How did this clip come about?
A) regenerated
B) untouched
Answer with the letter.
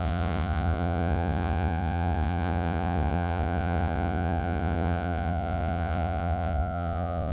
A